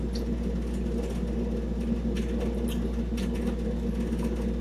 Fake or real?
real